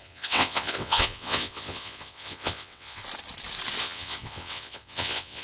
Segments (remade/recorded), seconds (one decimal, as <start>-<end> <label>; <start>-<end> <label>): 0.0-3.0 remade; 3.0-3.8 recorded; 3.8-5.4 remade